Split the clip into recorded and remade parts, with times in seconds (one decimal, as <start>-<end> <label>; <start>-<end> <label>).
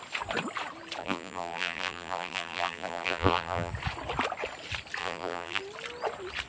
0.0-1.0 recorded; 1.0-3.7 remade; 3.7-5.0 recorded; 5.0-5.6 remade; 5.6-6.5 recorded